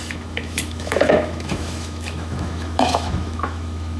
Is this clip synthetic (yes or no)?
yes